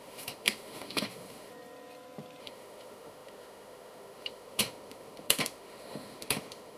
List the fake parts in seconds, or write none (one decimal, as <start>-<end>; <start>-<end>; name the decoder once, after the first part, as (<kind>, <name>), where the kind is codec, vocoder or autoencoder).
0.0-1.5 (autoencoder, DAC-VAE); 2.4-6.8

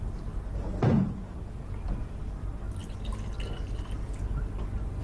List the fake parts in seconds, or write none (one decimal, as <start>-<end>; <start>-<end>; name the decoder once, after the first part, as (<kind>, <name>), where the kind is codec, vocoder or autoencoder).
none

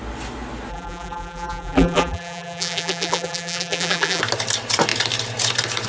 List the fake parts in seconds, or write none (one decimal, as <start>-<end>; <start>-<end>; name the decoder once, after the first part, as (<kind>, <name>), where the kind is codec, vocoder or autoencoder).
0.7-4.2 (vocoder, BigVGAN v2)

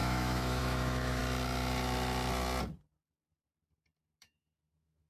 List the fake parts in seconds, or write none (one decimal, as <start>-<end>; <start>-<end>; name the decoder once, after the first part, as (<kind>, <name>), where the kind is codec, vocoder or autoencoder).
0.0-1.2 (autoencoder, DAC-VAE); 4.2-5.1

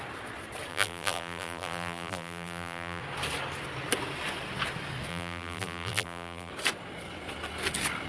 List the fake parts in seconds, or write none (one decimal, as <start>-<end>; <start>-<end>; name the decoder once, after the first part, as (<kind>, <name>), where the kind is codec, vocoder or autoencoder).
0.7-3.0 (vocoder, BigVGAN v2); 5.1-6.5